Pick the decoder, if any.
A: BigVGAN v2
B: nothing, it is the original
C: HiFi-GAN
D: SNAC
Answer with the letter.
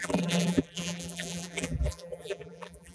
A